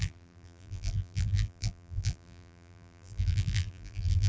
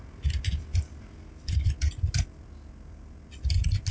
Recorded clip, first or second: second